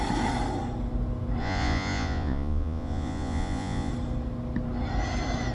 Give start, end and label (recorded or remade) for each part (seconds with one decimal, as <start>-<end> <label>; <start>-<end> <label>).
0.0-1.4 recorded; 1.4-3.9 remade; 3.9-5.5 recorded